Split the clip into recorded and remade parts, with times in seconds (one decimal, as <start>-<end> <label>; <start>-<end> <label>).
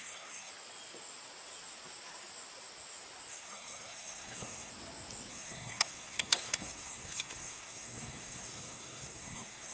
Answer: 0.0-0.5 remade; 0.5-3.3 recorded; 3.3-4.7 remade; 4.7-5.3 recorded; 5.3-9.7 remade